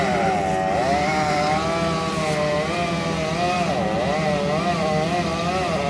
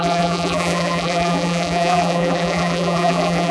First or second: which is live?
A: first